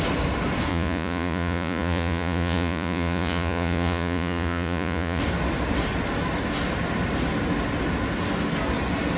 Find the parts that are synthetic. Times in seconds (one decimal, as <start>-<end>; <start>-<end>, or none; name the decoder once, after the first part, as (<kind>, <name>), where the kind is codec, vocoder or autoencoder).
0.7-5.2 (vocoder, Vocos)